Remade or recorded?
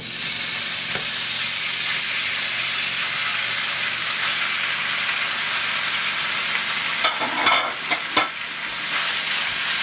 recorded